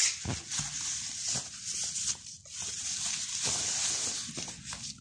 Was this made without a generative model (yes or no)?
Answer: yes